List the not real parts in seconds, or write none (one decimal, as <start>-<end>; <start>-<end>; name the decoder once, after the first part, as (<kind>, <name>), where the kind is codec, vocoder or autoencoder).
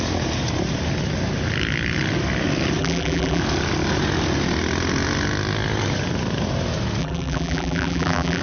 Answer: 2.8-3.4 (vocoder, BigVGAN v2); 7.0-8.4